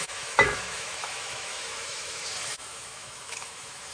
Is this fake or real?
fake